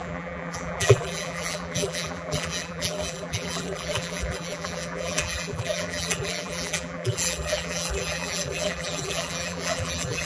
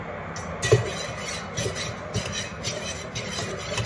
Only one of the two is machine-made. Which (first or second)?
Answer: first